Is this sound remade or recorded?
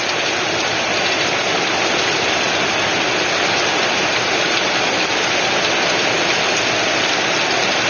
recorded